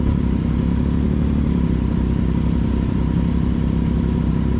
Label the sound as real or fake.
real